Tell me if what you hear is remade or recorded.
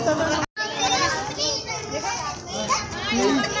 recorded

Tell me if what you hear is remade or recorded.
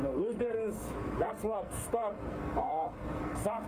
remade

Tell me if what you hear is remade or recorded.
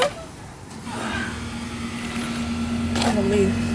recorded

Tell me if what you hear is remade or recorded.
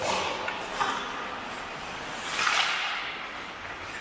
recorded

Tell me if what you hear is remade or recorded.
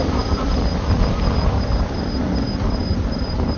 recorded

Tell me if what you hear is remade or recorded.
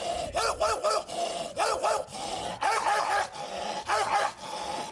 recorded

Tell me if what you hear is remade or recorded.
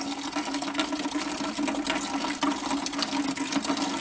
recorded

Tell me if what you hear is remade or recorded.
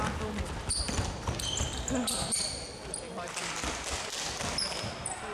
recorded